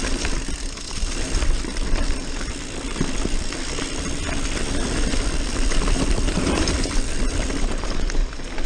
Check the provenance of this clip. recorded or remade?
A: remade